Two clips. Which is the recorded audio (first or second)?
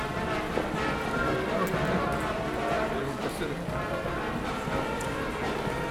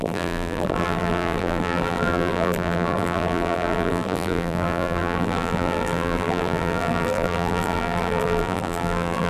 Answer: first